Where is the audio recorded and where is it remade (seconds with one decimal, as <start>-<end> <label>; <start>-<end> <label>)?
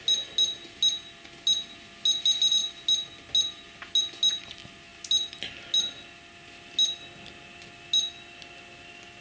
0.0-9.2 recorded